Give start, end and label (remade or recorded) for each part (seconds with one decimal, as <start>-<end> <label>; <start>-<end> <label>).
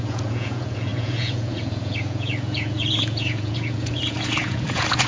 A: 0.0-5.1 remade